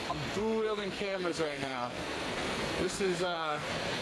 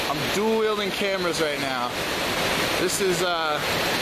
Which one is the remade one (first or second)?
first